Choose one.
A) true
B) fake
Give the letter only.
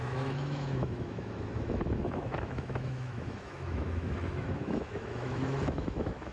B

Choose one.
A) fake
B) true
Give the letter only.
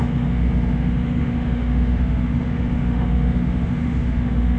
A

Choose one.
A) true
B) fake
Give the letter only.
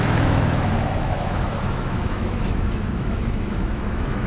B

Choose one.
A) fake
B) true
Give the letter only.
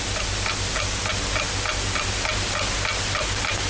B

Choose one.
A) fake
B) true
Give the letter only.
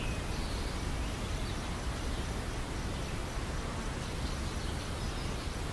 B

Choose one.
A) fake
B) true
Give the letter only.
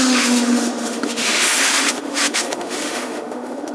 A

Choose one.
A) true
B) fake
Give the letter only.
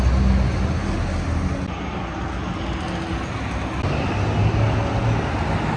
A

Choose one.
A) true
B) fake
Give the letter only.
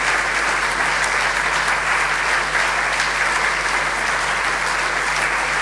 A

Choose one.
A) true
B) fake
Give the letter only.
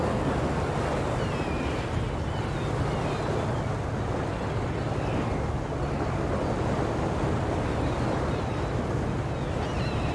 A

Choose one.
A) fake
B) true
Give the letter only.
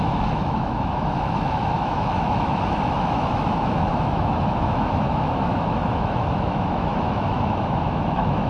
A